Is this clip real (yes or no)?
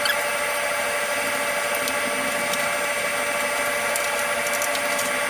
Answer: yes